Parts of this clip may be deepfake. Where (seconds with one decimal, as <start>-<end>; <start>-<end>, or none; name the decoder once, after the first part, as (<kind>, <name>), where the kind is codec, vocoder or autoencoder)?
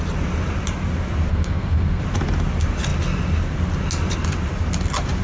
1.3-2.0 (codec, SNAC)